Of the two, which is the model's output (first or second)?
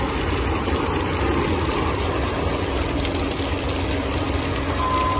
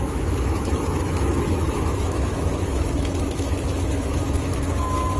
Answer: second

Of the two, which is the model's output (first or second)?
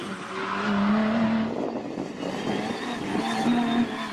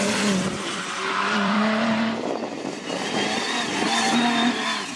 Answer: second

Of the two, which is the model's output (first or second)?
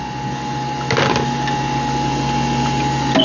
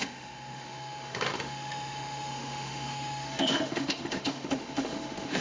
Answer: second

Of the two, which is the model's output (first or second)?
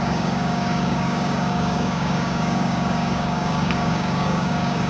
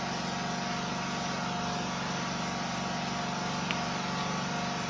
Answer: first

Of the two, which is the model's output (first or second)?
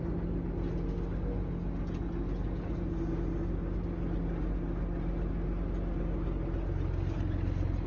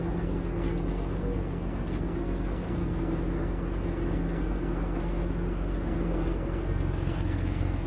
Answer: second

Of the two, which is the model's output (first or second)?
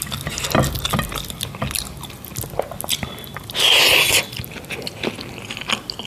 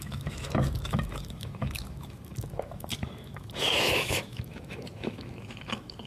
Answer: second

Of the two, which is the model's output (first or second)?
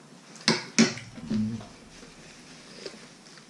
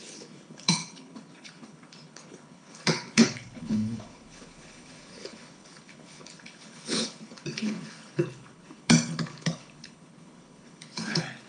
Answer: second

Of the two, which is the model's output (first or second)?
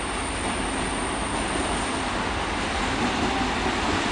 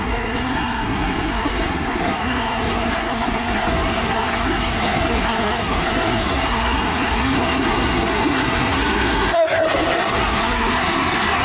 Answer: second